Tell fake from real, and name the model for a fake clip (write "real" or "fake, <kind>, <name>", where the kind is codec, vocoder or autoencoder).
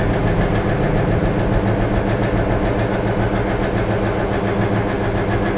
real